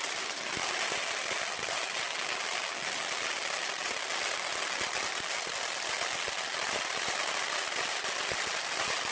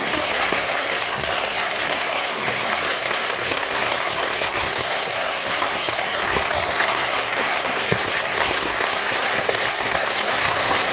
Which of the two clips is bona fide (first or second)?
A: first